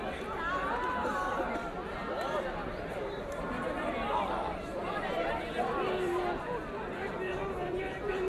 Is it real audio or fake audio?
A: fake